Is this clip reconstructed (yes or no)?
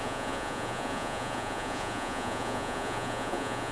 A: yes